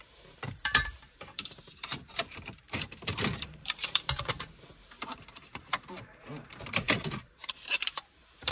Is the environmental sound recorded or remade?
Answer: remade